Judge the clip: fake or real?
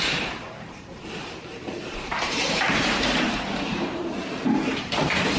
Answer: fake